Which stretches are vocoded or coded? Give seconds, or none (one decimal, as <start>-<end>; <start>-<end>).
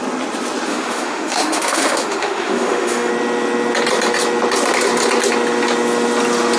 0.7-3.1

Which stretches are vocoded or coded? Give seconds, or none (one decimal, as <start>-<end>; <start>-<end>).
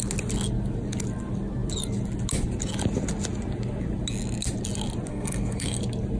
5.1-5.8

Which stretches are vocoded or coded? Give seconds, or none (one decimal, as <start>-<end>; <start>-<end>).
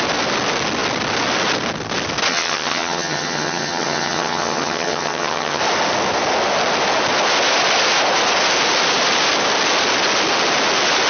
2.3-5.6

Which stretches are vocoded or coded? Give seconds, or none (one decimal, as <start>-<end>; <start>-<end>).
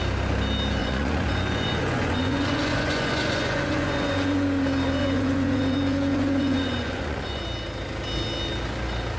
0.8-4.6; 5.0-7.4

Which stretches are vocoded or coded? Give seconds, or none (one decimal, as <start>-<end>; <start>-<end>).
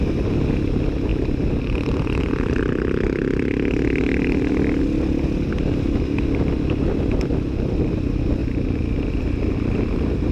none